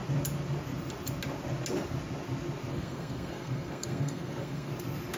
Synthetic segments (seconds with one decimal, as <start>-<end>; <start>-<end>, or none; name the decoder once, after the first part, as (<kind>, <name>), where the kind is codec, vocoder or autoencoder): 2.7-4.7 (codec, SNAC)